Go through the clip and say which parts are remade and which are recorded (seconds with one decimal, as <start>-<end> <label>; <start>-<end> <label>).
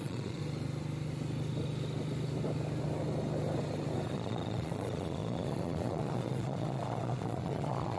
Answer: 0.0-0.4 remade; 0.4-4.1 recorded; 4.1-8.0 remade